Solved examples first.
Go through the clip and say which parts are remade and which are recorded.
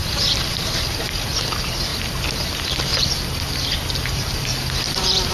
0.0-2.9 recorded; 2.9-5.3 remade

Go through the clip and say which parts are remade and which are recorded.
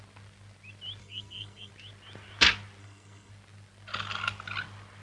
0.0-1.0 recorded; 1.0-1.7 remade; 1.7-2.8 recorded; 2.8-3.3 remade; 3.3-5.0 recorded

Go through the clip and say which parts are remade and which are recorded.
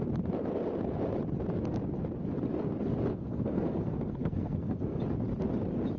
0.0-3.1 recorded; 3.1-5.0 remade; 5.0-6.0 recorded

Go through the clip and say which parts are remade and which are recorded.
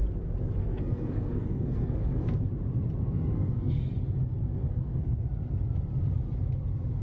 0.0-0.6 recorded; 0.6-2.5 remade; 2.5-3.0 recorded; 3.0-3.8 remade; 3.8-4.6 recorded; 4.6-5.2 remade; 5.2-7.0 recorded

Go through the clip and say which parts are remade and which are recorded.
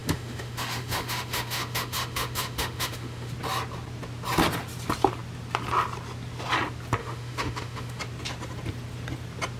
0.0-3.3 remade; 3.3-7.0 recorded; 7.0-8.0 remade; 8.0-9.6 recorded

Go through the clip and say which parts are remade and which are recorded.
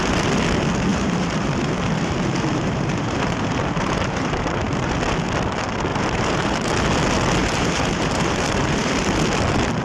0.0-0.9 recorded; 0.9-4.9 remade; 4.9-5.9 recorded; 5.9-6.7 remade; 6.7-7.4 recorded; 7.4-9.0 remade; 9.0-9.8 recorded